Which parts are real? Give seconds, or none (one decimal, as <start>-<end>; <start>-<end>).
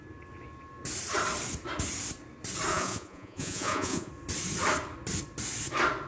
0.0-2.7; 4.1-6.1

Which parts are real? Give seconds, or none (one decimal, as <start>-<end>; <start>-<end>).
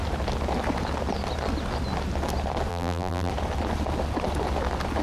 0.0-2.7; 3.3-5.0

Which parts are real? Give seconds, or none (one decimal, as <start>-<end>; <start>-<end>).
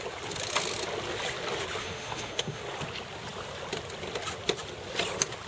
0.0-1.8; 2.6-5.5